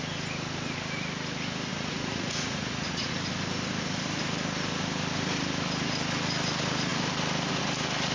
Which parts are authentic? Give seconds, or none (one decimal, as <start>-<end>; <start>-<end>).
0.0-1.7; 3.1-8.1